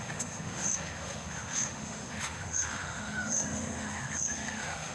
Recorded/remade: remade